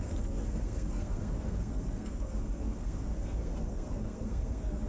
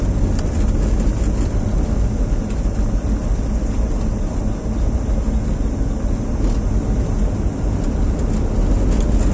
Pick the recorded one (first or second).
second